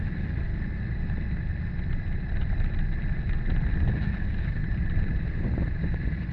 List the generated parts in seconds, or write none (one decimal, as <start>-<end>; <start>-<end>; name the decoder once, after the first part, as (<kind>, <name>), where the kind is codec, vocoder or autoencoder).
0.0-0.5 (autoencoder, DAC-VAE); 3.9-4.6; 5.2-6.3